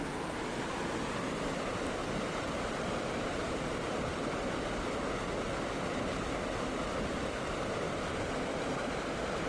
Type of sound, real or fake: real